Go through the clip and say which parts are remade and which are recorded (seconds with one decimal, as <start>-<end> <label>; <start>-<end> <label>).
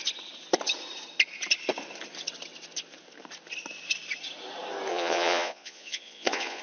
0.0-4.9 recorded; 4.9-6.6 remade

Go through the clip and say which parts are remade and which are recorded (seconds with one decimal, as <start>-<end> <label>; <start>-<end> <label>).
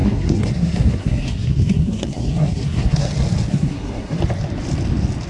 0.0-3.1 remade; 3.1-3.5 recorded; 3.5-4.2 remade; 4.2-5.3 recorded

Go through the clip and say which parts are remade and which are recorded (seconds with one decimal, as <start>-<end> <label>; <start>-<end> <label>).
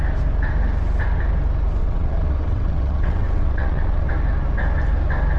0.0-1.8 recorded; 1.8-4.1 remade; 4.1-5.4 recorded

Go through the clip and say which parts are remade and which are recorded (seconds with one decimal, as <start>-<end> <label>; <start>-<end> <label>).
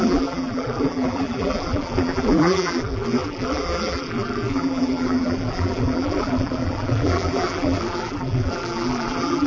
0.0-9.5 remade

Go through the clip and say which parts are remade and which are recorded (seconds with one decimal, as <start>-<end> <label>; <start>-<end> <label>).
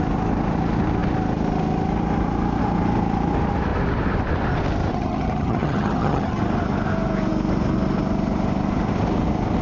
0.0-4.9 recorded; 4.9-6.4 remade; 6.4-9.6 recorded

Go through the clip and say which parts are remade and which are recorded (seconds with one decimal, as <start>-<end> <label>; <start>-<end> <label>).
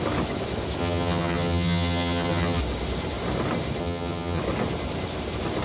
0.0-0.8 recorded; 0.8-2.6 remade; 2.6-3.8 recorded; 3.8-4.4 remade; 4.4-5.6 recorded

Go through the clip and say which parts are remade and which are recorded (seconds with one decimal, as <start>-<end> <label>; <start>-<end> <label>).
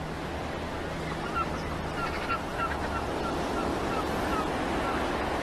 0.0-5.4 recorded